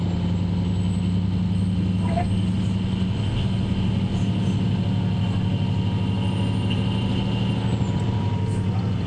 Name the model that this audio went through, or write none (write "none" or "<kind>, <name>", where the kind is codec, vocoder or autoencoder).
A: none